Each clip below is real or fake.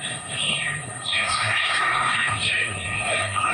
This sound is fake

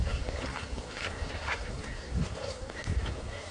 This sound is fake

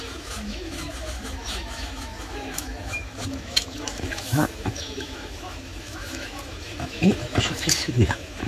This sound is fake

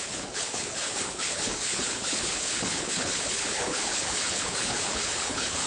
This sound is fake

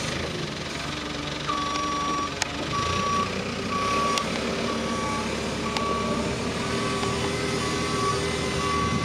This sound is real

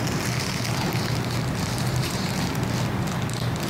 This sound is real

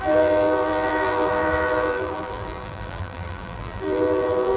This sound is fake